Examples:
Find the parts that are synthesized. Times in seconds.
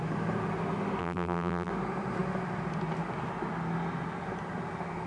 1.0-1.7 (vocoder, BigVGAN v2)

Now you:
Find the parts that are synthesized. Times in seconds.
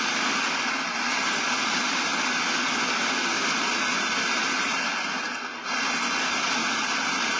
none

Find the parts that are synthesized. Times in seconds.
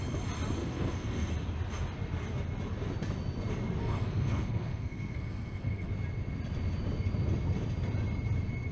0.6-1.3 (codec, SNAC); 3.8-5.9